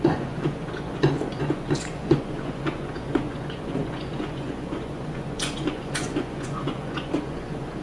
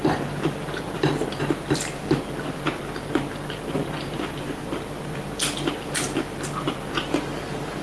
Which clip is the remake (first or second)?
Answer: first